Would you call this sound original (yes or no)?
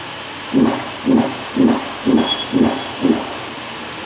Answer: yes